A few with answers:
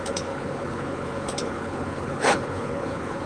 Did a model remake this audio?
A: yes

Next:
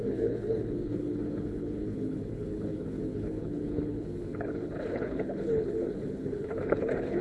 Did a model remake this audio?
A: yes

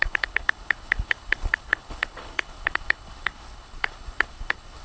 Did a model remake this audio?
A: yes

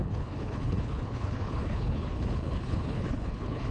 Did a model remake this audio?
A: yes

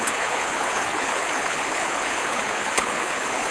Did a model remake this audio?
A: yes